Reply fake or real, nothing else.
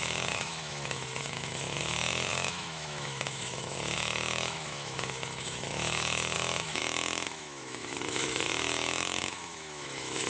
fake